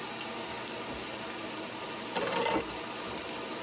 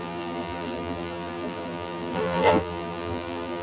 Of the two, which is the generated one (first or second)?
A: second